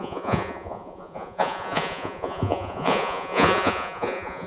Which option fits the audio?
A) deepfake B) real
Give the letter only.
A